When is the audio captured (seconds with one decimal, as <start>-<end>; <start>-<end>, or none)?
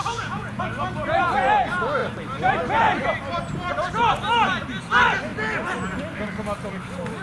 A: 0.6-7.2